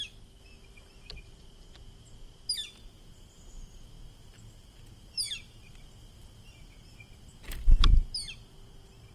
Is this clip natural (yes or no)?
yes